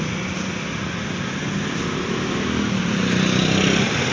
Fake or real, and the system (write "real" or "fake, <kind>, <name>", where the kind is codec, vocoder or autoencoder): real